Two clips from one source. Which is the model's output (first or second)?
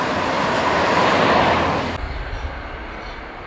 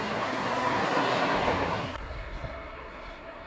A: second